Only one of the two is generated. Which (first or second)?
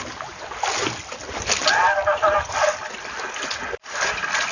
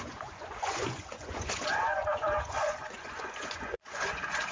second